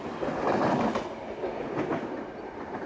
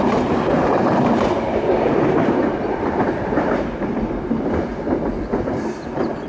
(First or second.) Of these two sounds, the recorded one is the first